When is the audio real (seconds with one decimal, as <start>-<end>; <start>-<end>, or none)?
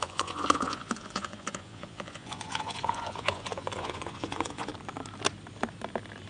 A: 4.7-6.3